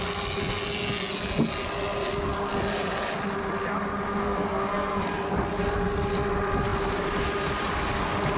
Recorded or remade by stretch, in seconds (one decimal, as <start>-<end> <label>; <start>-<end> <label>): 0.0-4.2 recorded; 4.2-5.0 remade; 5.0-8.4 recorded